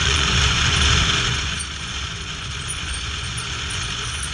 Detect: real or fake fake